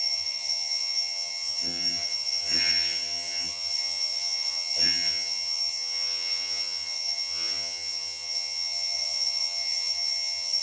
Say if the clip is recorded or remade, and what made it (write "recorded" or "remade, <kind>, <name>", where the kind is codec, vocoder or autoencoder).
remade, vocoder, HiFi-GAN